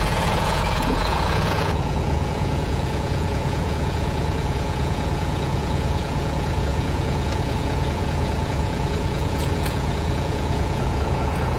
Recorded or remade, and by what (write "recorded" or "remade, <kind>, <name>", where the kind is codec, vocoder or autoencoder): remade, vocoder, Vocos